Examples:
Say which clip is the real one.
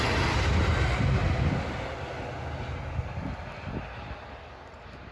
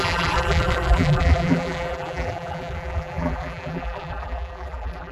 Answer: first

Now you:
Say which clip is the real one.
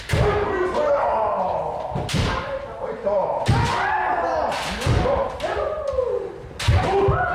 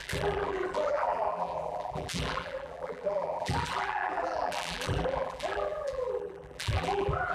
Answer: first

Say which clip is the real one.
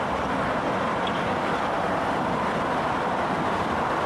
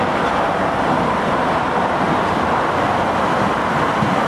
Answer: second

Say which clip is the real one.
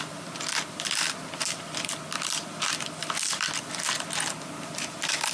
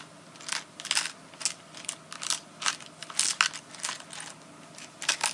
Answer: second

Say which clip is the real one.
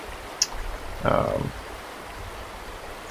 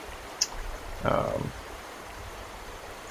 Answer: first